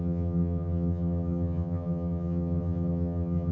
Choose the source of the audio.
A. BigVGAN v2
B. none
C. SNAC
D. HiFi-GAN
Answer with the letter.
D